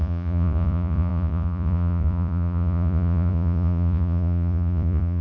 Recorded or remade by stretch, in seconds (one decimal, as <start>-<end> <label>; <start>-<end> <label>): 0.0-5.2 remade